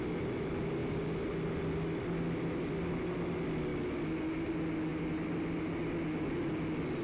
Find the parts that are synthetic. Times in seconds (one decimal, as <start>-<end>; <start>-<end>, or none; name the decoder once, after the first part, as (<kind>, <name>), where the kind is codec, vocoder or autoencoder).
none